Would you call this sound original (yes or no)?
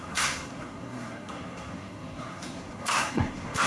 no